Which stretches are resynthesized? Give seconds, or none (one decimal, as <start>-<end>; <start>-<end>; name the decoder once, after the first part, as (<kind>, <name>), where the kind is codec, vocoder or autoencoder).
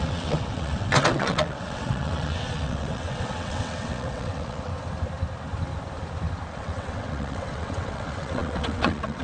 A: 0.0-4.7 (vocoder, WaveNeXt); 6.5-9.2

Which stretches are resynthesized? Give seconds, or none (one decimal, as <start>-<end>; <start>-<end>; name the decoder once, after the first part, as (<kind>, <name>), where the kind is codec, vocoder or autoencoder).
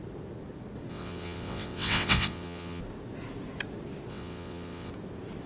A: 0.9-2.8 (vocoder, WaveNeXt); 4.1-4.9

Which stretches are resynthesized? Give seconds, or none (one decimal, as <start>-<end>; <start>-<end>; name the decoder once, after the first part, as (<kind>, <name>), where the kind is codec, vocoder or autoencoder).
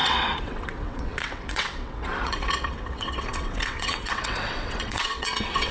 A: 0.0-5.7 (vocoder, WaveNeXt)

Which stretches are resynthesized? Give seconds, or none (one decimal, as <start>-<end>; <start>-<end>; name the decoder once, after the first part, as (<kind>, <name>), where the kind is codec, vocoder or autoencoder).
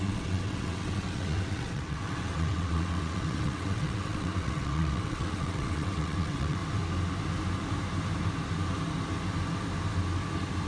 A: 0.0-6.6 (vocoder, WaveNeXt)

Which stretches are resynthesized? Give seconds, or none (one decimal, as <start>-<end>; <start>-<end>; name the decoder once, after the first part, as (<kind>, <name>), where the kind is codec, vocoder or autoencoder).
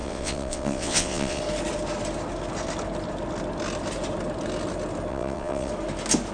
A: 0.0-1.4 (vocoder, WaveNeXt); 5.1-5.7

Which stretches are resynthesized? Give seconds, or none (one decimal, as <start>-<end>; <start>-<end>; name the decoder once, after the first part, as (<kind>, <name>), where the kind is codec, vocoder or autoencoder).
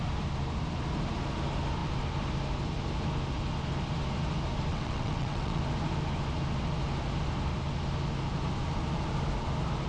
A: 4.7-5.6 (vocoder, WaveNeXt)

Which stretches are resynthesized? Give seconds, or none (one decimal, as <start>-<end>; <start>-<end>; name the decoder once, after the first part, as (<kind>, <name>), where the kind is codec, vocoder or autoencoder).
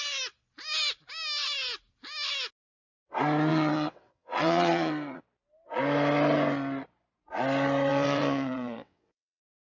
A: 3.5-4.9 (vocoder, WaveNeXt); 7.9-9.4